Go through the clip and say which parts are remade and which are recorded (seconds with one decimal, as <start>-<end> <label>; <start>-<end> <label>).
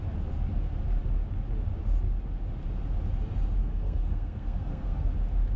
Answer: 0.0-3.6 recorded; 3.6-5.1 remade; 5.1-5.6 recorded